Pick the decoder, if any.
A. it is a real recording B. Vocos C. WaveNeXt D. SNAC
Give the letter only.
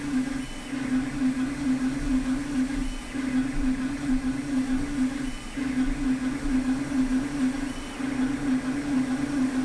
A